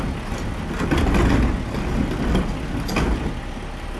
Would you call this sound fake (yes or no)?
no